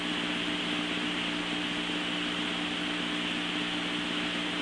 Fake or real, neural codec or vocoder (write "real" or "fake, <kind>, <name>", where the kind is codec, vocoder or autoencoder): real